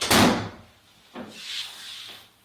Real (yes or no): yes